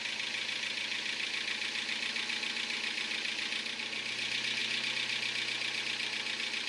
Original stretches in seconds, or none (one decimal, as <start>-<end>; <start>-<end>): 0.0-6.7